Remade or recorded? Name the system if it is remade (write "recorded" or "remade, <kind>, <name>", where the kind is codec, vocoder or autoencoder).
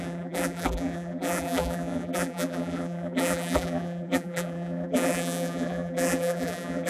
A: remade, vocoder, BigVGAN v2